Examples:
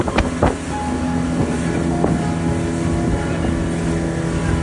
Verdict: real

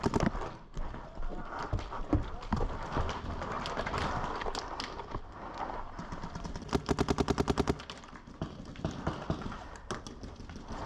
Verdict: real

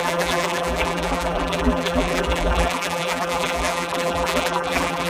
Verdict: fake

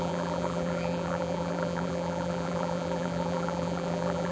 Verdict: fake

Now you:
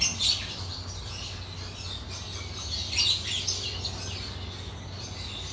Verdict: real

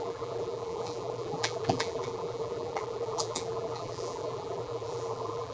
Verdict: fake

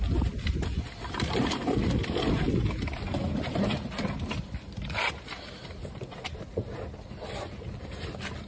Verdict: real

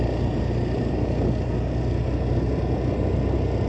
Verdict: real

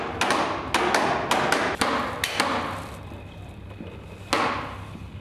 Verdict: real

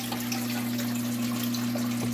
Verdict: real